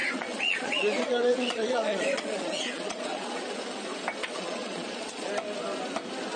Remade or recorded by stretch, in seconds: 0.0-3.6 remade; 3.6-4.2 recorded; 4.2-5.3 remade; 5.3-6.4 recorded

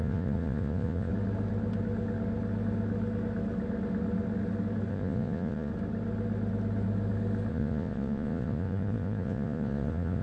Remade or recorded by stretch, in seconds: 0.0-1.1 remade; 1.1-4.9 recorded; 4.9-5.7 remade; 5.7-7.5 recorded; 7.5-10.2 remade

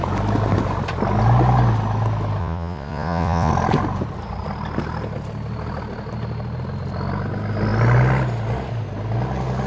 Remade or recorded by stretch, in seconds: 0.0-2.4 recorded; 2.4-3.5 remade; 3.5-9.7 recorded

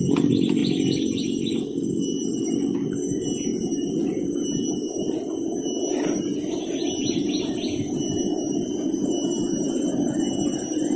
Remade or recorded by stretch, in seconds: 0.0-11.0 recorded

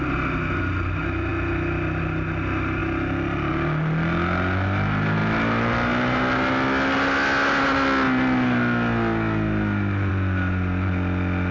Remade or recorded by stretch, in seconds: 0.0-11.5 recorded

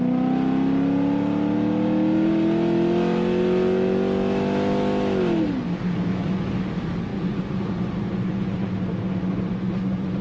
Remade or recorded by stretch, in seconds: 0.0-6.1 recorded; 6.1-6.6 remade; 6.6-7.1 recorded; 7.1-8.7 remade; 8.7-9.3 recorded; 9.3-10.2 remade